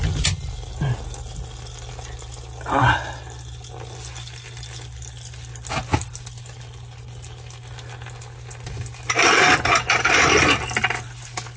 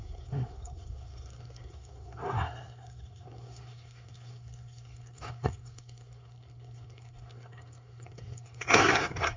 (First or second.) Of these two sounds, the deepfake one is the second